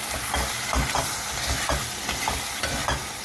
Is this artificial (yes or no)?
no